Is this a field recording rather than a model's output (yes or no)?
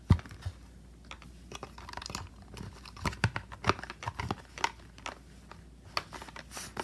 yes